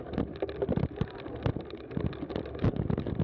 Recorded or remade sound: recorded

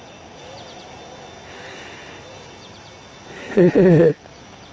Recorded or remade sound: recorded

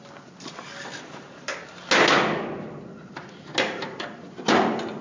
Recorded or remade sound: recorded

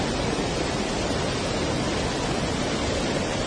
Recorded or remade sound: recorded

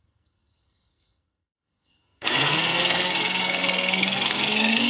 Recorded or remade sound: remade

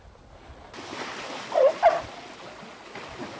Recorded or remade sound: recorded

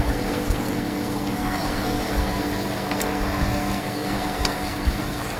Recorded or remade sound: remade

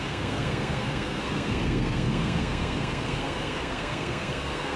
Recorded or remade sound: remade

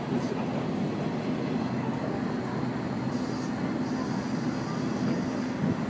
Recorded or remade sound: recorded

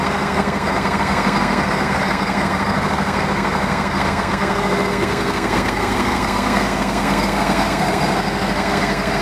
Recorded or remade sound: remade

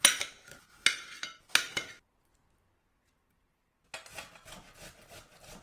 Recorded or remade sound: recorded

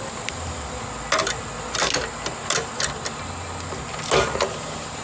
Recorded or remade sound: recorded